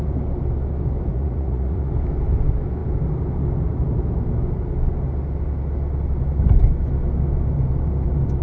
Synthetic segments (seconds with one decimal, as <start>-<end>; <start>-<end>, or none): 1.1-1.9